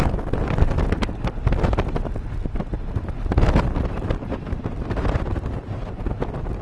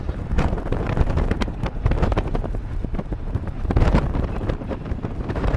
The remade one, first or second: second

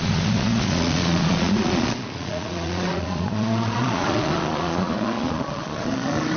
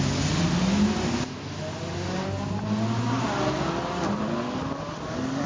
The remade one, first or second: first